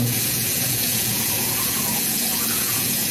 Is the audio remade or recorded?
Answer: remade